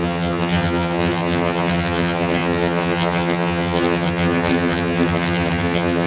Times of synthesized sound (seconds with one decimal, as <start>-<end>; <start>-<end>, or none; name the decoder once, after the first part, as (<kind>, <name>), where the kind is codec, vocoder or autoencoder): 0.0-6.1 (vocoder, HiFi-GAN)